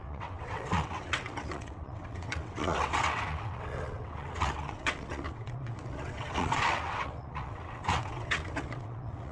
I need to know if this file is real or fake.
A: fake